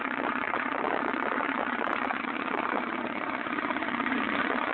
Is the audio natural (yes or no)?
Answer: no